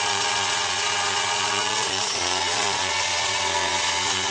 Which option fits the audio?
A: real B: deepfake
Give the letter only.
B